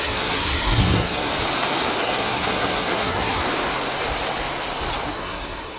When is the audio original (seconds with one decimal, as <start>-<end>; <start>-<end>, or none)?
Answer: 1.3-2.0; 3.4-5.1